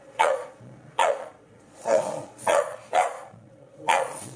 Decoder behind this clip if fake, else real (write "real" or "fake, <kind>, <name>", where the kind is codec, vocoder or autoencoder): fake, vocoder, Vocos